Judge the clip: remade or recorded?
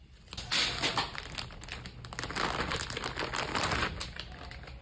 recorded